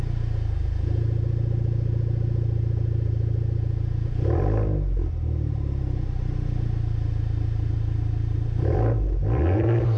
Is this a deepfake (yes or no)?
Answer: no